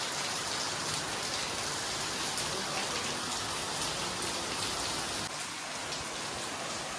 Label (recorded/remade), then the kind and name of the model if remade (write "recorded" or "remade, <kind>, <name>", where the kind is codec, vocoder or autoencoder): recorded